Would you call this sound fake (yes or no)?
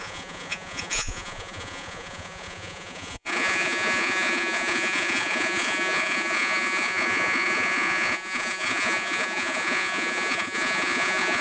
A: yes